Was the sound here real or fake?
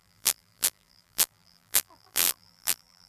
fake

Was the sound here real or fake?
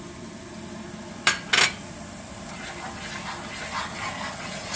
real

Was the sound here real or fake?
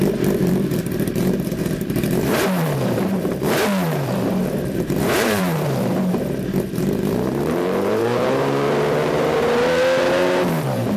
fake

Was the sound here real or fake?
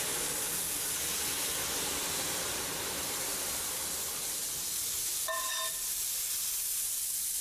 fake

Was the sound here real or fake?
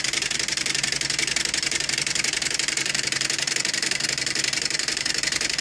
fake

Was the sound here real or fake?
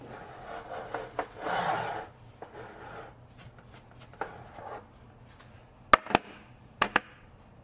real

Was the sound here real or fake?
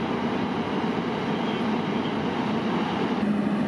real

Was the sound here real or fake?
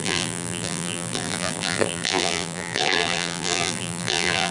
fake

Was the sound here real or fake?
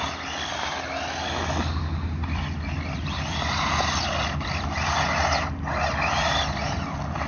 real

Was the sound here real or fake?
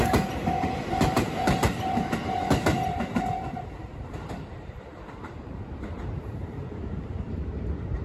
fake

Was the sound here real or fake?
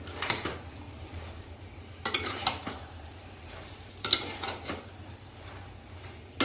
fake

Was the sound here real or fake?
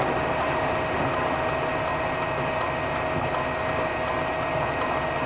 real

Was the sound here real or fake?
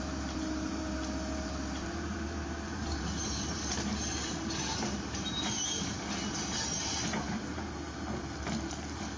fake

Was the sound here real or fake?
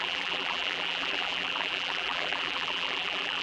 fake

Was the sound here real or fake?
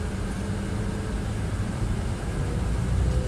real